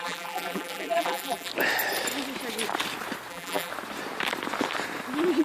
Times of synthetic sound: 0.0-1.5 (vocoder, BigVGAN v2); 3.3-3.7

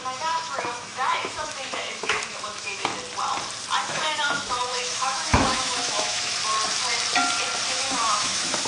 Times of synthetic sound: 0.0-2.9 (autoencoder, DAC-VAE); 3.8-6.4; 7.7-8.7

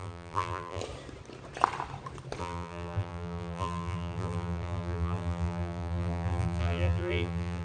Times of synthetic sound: 0.0-0.8 (vocoder, BigVGAN v2); 2.4-7.6

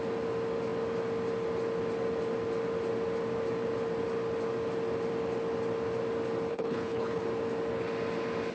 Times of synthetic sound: 6.5-7.2 (codec, HILCodec)

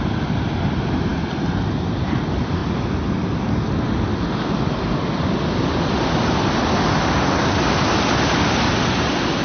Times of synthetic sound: none

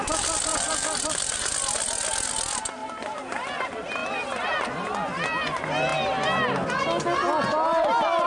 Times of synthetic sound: 0.5-1.5 (vocoder, BigVGAN v2); 2.8-3.6

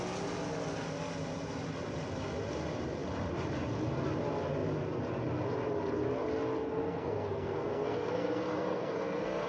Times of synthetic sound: 6.6-9.5 (codec, SNAC)